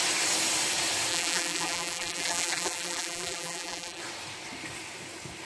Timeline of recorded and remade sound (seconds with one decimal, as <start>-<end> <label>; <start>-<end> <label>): 0.0-1.1 recorded; 1.1-4.0 remade; 4.0-5.4 recorded

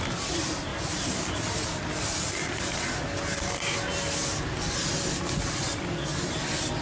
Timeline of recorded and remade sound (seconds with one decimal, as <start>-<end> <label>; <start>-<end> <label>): 0.0-0.7 remade; 0.7-4.4 recorded; 4.4-6.1 remade; 6.1-6.8 recorded

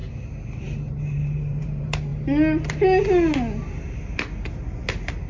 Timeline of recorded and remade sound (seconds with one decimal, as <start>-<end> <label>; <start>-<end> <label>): 0.0-0.6 recorded; 0.6-2.1 remade; 2.1-5.3 recorded

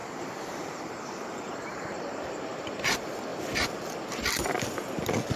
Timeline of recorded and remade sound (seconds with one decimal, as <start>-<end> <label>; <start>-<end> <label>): 0.0-2.7 remade; 2.7-5.4 recorded